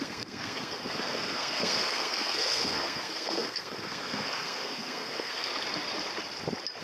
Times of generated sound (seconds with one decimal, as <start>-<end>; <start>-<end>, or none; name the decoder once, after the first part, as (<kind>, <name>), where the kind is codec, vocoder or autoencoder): 0.0-5.5 (codec, SNAC)